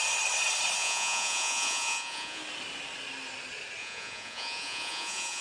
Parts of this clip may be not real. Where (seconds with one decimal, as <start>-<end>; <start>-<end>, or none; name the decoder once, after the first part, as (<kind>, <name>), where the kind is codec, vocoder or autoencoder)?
0.8-2.4 (vocoder, Vocos); 3.8-5.4